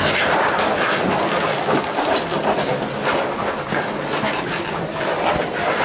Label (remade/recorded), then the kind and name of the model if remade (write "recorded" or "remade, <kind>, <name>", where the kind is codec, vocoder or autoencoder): recorded